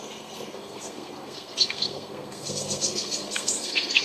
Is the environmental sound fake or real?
fake